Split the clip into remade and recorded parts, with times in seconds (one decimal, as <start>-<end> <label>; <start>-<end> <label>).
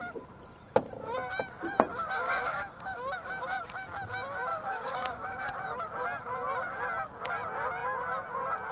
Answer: 0.0-1.9 recorded; 1.9-3.0 remade; 3.0-4.5 recorded; 4.5-5.4 remade; 5.4-8.7 recorded